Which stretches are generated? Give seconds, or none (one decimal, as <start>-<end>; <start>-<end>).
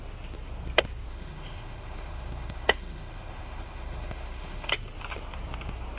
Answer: 1.1-4.7